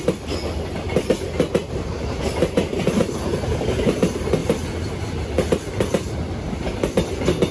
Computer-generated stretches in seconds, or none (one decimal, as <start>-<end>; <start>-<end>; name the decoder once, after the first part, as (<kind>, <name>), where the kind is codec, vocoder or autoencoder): none

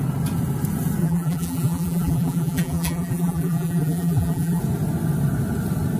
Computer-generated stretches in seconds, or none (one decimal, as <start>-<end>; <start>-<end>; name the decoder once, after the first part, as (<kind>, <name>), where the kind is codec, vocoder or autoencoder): 1.0-4.6 (vocoder, BigVGAN v2)

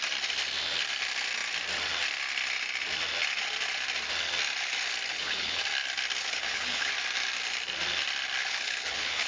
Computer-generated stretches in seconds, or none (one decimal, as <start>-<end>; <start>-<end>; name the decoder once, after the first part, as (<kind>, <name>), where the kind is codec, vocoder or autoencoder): 5.1-5.6 (codec, HILCodec); 6.2-6.9; 8.4-9.3

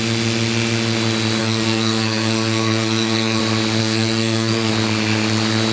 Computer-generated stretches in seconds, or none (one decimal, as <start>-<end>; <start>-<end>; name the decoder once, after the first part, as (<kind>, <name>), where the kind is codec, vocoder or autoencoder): 1.4-3.4 (codec, SNAC); 3.8-4.7